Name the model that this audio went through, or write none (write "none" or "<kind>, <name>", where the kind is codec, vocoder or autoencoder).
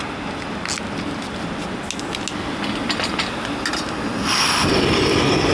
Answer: none